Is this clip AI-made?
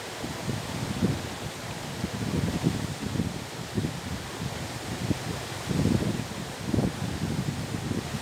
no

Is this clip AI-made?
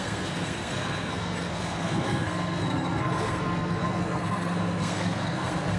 yes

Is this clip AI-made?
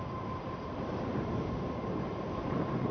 yes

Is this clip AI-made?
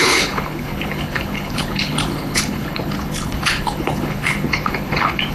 yes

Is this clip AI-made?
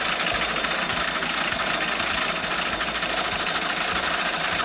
yes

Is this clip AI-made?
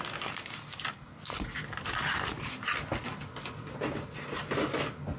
no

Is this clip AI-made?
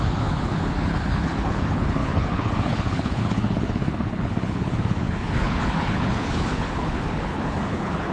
yes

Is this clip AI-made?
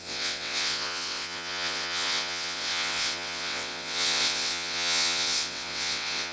yes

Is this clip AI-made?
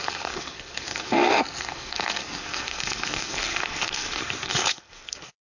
yes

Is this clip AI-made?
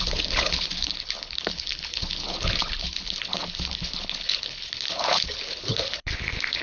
yes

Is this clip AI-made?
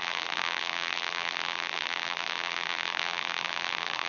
yes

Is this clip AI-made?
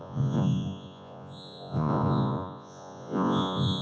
yes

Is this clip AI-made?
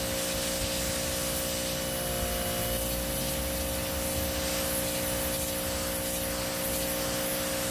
no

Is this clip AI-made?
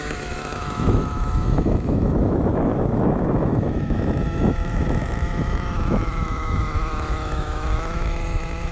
yes